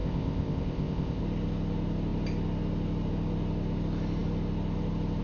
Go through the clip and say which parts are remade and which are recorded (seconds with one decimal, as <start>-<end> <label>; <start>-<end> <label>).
0.0-1.2 remade; 1.2-5.2 recorded